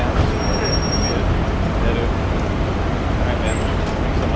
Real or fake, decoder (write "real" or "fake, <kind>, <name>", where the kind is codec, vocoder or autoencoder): real